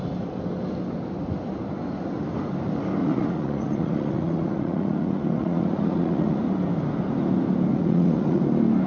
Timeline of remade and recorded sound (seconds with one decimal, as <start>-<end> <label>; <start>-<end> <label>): 0.0-3.0 recorded; 3.0-6.4 remade; 6.4-7.7 recorded; 7.7-8.4 remade; 8.4-8.9 recorded